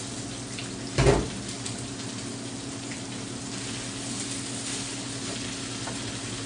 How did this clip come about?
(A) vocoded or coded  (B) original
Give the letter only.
B